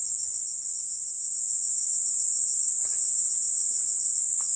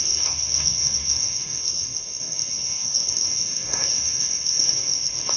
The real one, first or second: first